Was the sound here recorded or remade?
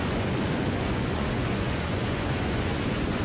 remade